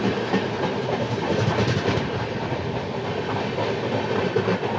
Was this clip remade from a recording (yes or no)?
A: no